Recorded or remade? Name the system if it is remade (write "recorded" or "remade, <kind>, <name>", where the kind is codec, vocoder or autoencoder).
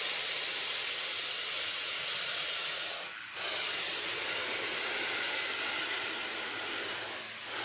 recorded